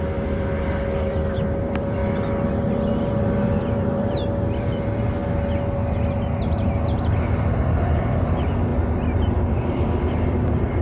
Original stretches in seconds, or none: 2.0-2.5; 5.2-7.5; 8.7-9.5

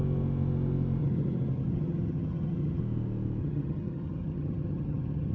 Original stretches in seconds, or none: 0.0-1.0; 2.8-3.4

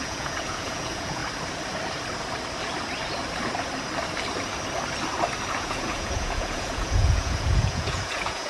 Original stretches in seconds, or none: 1.2-5.5